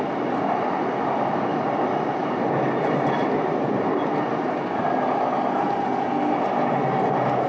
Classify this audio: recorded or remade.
recorded